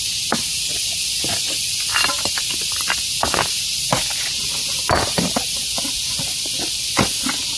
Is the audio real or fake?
real